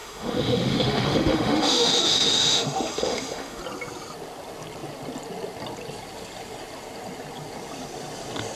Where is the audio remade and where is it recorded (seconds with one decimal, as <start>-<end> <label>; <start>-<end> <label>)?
0.0-3.6 remade; 3.6-8.6 recorded